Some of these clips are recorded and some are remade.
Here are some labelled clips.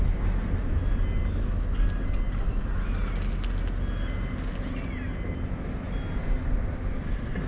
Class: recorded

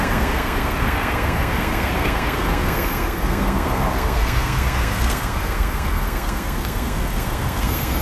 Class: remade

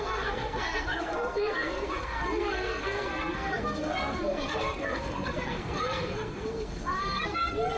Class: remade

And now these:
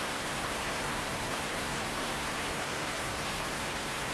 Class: remade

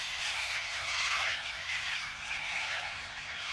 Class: remade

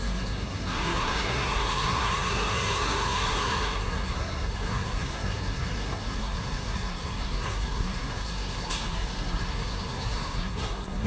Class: remade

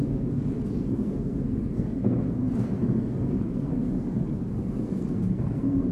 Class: remade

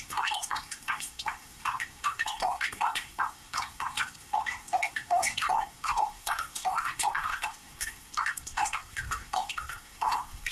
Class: remade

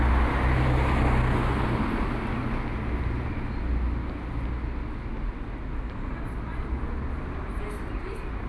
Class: recorded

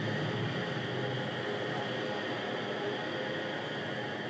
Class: recorded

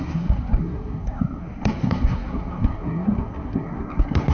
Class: remade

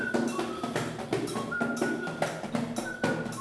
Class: recorded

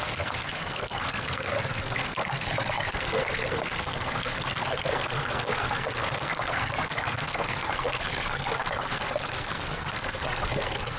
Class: remade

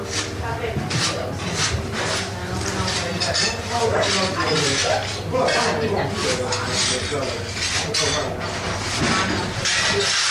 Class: recorded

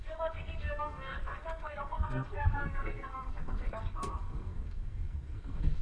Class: remade